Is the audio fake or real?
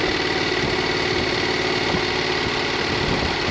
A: real